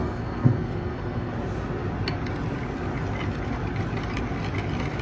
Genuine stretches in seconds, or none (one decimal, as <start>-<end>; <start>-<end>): 1.3-5.0